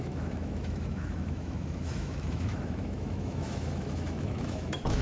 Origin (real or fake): fake